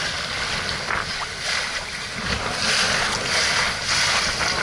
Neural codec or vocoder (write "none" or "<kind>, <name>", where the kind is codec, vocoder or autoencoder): none